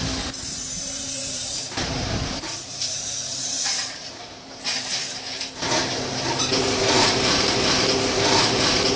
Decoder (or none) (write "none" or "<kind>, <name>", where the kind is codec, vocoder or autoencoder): vocoder, BigVGAN v2